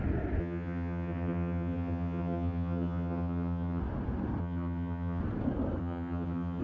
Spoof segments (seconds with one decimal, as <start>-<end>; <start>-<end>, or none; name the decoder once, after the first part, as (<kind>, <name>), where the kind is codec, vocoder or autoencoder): 0.4-3.8 (vocoder, HiFi-GAN); 4.4-5.2; 5.8-6.6